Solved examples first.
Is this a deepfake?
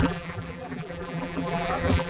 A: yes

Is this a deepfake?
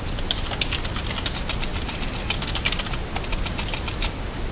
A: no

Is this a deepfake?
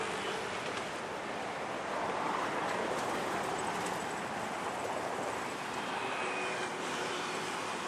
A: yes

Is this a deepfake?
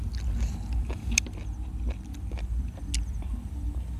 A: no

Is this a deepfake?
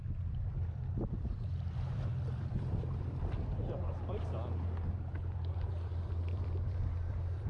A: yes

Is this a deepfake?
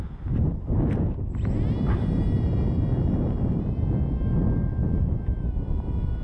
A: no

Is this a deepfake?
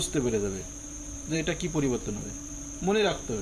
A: yes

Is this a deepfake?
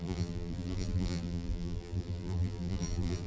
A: yes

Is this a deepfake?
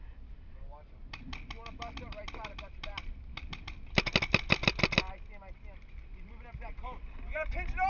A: no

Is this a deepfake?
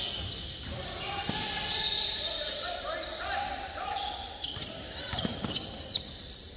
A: yes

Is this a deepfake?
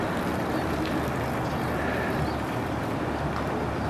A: no